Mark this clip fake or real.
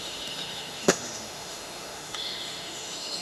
fake